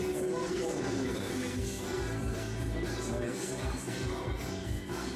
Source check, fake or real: fake